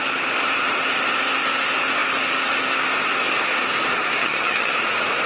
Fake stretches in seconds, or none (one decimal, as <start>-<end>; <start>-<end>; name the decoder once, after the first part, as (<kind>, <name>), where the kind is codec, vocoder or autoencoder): 4.2-4.7 (vocoder, HiFi-GAN)